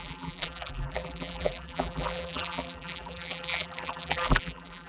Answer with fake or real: fake